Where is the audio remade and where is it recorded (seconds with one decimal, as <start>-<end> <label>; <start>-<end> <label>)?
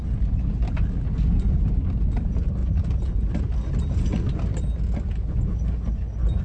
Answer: 0.0-2.6 recorded; 2.6-3.3 remade; 3.3-6.4 recorded